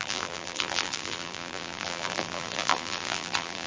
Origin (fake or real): fake